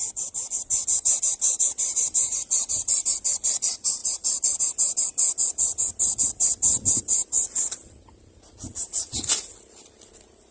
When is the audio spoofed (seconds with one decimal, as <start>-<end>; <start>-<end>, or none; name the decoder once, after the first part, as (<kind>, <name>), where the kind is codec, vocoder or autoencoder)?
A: none

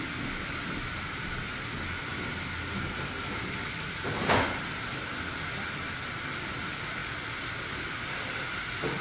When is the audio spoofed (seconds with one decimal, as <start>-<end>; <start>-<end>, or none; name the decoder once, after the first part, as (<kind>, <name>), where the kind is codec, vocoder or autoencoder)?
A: none

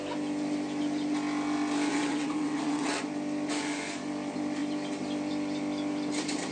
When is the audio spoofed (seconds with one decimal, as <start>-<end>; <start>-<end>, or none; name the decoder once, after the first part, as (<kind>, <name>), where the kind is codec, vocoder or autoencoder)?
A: 1.9-3.0 (vocoder, WaveNeXt)

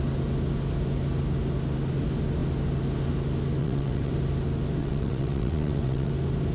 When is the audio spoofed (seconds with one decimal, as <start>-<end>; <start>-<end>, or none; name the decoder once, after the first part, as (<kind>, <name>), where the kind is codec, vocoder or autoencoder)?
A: 3.6-4.1 (vocoder, WaveNeXt); 4.8-6.1

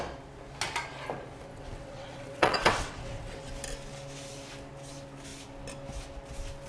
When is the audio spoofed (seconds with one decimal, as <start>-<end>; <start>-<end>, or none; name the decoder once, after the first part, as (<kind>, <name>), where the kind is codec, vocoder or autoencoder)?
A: 1.5-3.5 (vocoder, WaveNeXt)

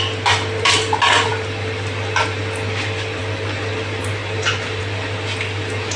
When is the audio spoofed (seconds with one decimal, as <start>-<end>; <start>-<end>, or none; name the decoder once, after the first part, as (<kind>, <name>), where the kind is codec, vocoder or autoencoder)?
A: none

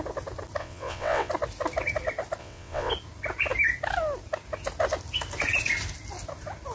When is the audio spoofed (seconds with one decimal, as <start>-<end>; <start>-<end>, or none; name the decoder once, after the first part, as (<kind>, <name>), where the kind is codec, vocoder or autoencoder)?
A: 0.6-1.3 (vocoder, WaveNeXt); 2.4-2.9

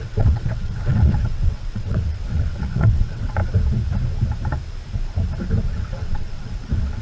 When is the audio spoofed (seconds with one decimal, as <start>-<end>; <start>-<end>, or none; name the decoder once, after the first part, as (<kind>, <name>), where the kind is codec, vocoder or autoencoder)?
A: 0.0-3.4 (vocoder, WaveNeXt); 5.7-7.0